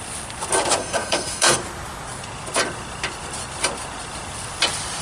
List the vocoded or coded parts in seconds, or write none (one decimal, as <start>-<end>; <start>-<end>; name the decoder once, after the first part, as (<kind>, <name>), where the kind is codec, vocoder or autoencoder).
0.8-1.6 (codec, SNAC)